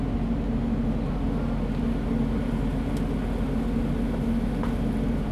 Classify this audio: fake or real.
real